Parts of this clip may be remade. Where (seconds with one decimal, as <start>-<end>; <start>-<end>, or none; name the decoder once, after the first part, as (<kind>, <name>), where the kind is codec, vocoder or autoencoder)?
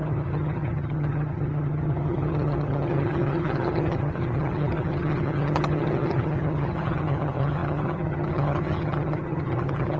0.0-10.0 (vocoder, HiFi-GAN)